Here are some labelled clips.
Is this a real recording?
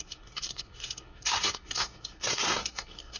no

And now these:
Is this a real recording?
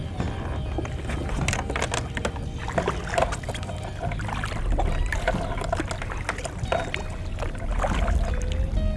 yes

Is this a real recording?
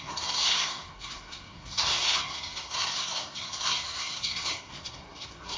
no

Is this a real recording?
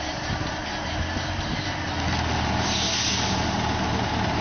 yes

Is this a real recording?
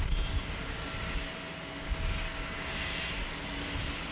yes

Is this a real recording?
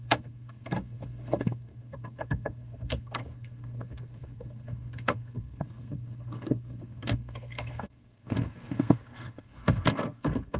no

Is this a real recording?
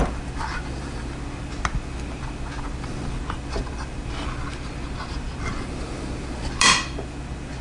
yes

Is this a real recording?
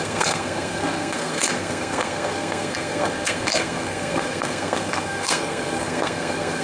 no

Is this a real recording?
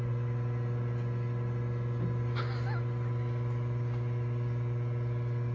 yes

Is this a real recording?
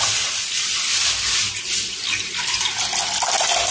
yes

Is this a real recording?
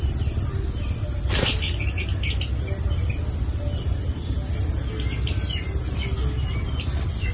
yes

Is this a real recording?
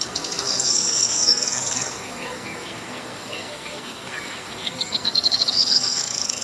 no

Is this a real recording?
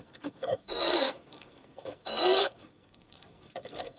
no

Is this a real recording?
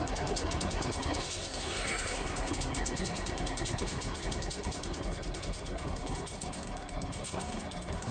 no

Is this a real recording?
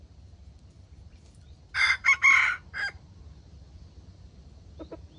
yes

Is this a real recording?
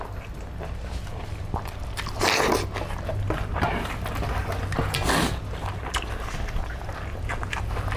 yes